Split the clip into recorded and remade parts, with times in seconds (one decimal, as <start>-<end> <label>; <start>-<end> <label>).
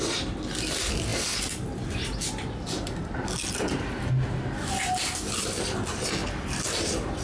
0.0-7.2 recorded